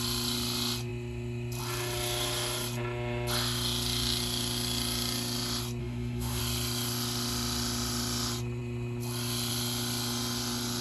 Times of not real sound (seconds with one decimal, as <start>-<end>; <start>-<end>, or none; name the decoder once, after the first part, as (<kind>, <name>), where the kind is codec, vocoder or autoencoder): 5.8-6.4 (autoencoder, DAC-VAE)